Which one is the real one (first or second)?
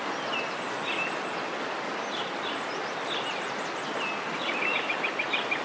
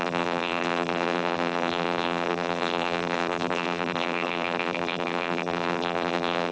first